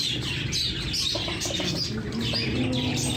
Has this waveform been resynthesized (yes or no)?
no